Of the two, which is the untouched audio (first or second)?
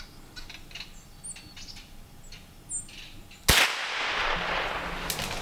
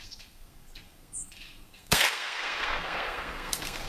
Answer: first